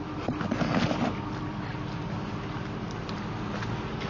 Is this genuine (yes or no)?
yes